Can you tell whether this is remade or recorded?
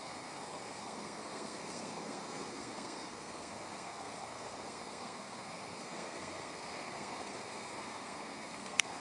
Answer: remade